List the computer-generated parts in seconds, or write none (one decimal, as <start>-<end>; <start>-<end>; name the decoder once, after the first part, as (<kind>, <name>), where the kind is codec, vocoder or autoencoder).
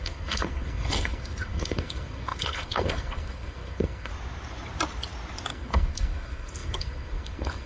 0.0-4.1 (codec, SNAC); 5.5-7.7